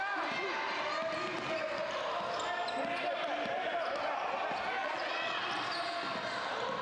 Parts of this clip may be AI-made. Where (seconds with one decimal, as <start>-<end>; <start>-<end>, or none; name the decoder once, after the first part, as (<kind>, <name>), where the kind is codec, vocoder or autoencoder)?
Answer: 4.8-5.4 (vocoder, Vocos)